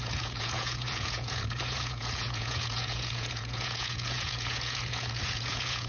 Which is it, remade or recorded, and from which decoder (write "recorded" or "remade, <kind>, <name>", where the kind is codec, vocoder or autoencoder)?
remade, vocoder, Vocos